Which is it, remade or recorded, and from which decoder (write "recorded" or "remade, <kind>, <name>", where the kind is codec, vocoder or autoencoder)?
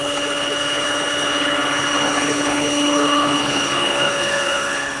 remade, codec, HILCodec